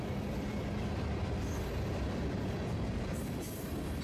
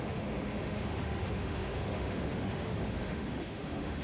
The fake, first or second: second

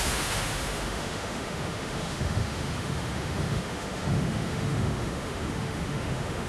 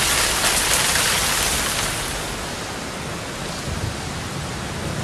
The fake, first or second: first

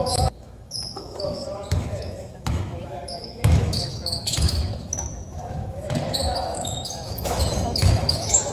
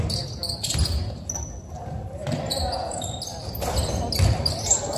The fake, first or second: first